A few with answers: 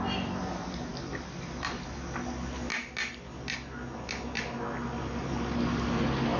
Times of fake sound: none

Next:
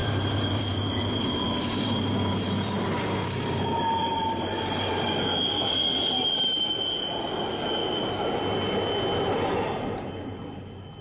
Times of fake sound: 0.0-4.9 (vocoder, BigVGAN v2)

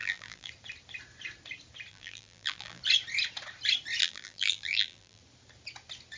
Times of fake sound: 0.0-0.5 (vocoder, BigVGAN v2); 1.9-2.8; 4.0-5.2

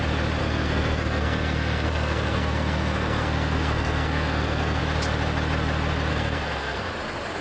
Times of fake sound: 0.4-4.8 (codec, SNAC); 6.1-6.8

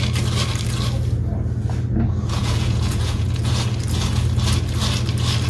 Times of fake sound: 2.4-3.5 (vocoder, Vocos)

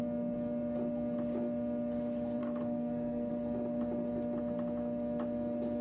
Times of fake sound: 2.4-3.3 (codec, SNAC)